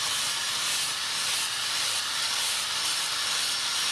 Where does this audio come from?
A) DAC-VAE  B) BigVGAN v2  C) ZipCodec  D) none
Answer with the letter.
B